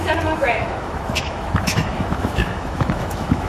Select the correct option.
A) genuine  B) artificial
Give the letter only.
B